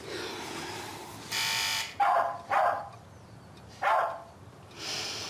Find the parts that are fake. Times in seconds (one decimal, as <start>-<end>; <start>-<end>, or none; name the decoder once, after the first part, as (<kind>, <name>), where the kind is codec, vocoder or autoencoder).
0.9-3.4 (vocoder, BigVGAN v2)